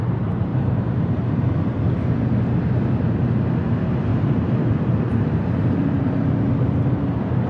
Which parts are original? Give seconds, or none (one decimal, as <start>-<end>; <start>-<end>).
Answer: 0.0-0.5; 1.8-4.1